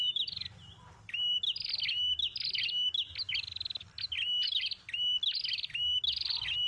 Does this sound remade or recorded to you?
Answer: recorded